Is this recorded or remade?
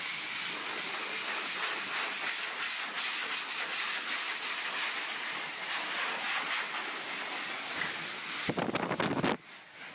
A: recorded